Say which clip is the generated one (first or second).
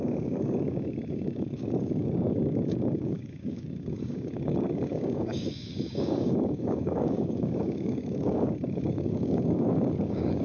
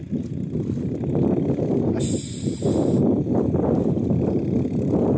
first